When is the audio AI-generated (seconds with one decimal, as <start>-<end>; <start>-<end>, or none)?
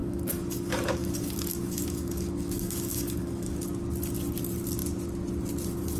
0.0-3.6